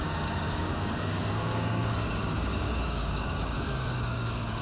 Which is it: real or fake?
fake